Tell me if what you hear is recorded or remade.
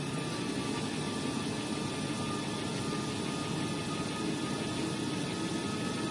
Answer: recorded